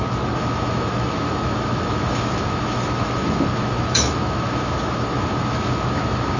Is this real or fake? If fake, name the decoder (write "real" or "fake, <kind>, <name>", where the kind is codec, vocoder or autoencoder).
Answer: fake, autoencoder, DAC-VAE